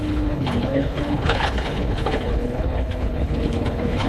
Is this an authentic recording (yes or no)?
no